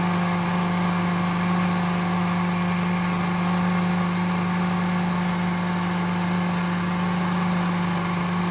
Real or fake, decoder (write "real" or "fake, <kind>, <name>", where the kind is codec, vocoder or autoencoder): real